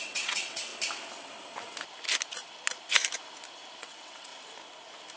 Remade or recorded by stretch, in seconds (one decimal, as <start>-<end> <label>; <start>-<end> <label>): 0.0-0.7 remade; 0.7-3.8 recorded; 3.8-4.3 remade; 4.3-5.2 recorded

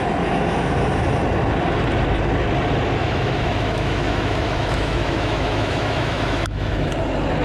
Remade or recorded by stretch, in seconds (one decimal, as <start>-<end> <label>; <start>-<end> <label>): 0.0-3.0 recorded; 3.0-6.9 remade; 6.9-7.4 recorded

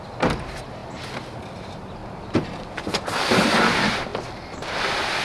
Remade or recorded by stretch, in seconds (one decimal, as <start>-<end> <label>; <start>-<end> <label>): 0.0-5.2 recorded

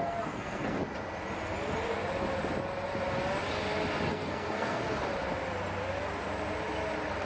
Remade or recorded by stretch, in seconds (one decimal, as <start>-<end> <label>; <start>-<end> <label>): 0.0-0.8 remade; 0.8-4.1 recorded; 4.1-4.8 remade; 4.8-7.3 recorded

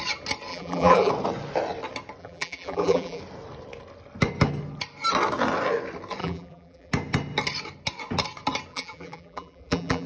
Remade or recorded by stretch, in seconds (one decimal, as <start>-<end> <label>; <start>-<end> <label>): 0.0-0.5 recorded; 0.5-1.1 remade; 1.1-2.2 recorded; 2.2-3.2 remade; 3.2-6.2 recorded; 6.2-6.9 remade; 6.9-8.7 recorded; 8.7-10.1 remade